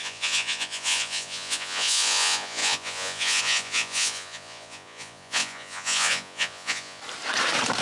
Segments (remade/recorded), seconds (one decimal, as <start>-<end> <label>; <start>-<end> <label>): 0.0-7.0 remade; 7.0-7.8 recorded

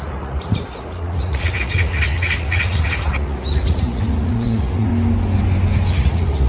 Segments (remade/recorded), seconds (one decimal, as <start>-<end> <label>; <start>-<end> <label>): 0.0-4.9 remade; 4.9-5.9 recorded; 5.9-6.5 remade

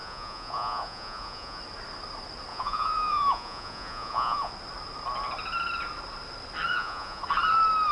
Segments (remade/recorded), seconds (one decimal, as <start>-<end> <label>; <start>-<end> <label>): 0.0-1.6 remade; 1.6-2.5 recorded; 2.5-4.5 remade; 4.5-6.7 recorded; 6.7-7.2 remade; 7.2-7.9 recorded

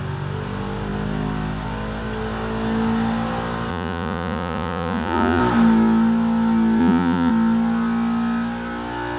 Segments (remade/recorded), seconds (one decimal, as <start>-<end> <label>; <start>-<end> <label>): 0.0-3.7 recorded; 3.7-5.4 remade; 5.4-6.8 recorded; 6.8-7.3 remade; 7.3-9.2 recorded

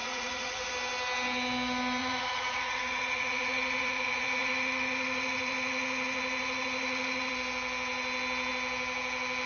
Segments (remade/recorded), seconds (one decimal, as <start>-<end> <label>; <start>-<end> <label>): 0.0-0.7 remade; 0.7-2.0 recorded; 2.0-7.3 remade; 7.3-9.5 recorded

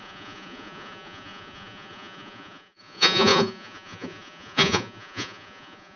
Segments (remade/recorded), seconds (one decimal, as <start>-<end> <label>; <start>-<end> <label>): 0.0-6.0 remade

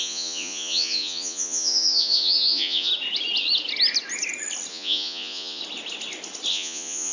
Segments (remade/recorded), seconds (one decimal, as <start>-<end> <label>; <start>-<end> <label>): 0.0-2.9 remade; 2.9-4.7 recorded; 4.7-5.6 remade; 5.6-6.5 recorded; 6.5-7.1 remade

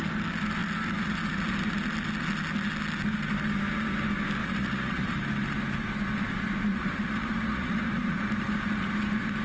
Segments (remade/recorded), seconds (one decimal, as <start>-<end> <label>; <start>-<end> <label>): 0.0-4.4 recorded; 4.4-5.2 remade; 5.2-6.7 recorded; 6.7-8.2 remade; 8.2-9.4 recorded